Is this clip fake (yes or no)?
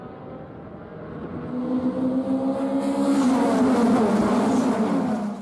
no